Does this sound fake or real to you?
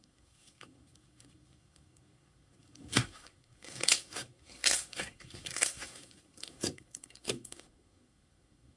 fake